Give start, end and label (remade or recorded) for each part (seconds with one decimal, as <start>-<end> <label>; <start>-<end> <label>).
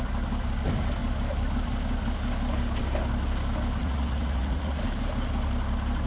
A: 0.0-3.8 recorded; 3.8-4.8 remade; 4.8-6.1 recorded